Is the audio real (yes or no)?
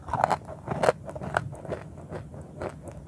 yes